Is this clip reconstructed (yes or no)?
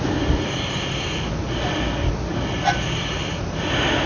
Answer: no